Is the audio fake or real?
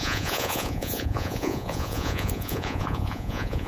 fake